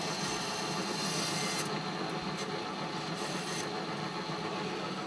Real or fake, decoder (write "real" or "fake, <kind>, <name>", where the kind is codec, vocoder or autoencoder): real